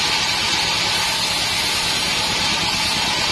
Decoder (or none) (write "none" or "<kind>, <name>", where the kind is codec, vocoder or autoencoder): none